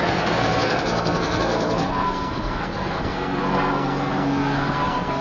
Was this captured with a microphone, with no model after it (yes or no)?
no